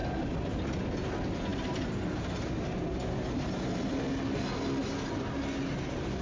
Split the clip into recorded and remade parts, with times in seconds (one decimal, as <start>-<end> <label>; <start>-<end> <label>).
0.0-6.2 recorded